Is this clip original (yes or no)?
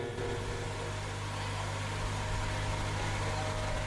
yes